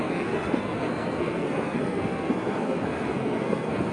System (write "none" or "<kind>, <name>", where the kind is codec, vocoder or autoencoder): codec, SNAC